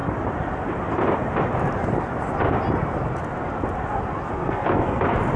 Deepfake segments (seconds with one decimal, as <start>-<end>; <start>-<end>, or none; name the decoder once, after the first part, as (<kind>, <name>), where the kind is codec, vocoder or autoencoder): 4.3-5.0 (codec, SNAC)